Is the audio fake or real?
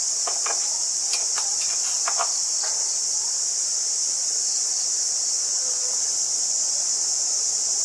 real